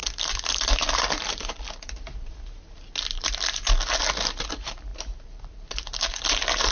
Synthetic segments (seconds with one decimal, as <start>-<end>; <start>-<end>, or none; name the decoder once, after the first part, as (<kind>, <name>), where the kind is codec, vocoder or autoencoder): 0.0-2.3 (vocoder, BigVGAN v2); 4.9-5.7